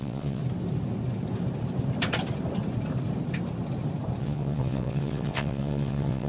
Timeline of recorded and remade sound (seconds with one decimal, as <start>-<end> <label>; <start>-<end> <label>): 0.0-0.4 remade; 0.4-4.2 recorded; 4.2-6.3 remade

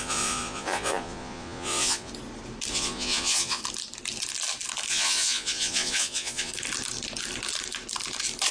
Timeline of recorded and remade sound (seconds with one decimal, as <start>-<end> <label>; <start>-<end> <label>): 0.0-2.1 remade; 2.1-2.7 recorded; 2.7-3.6 remade; 3.6-4.9 recorded; 4.9-6.5 remade; 6.5-8.5 recorded